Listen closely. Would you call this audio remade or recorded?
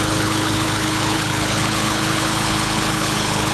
remade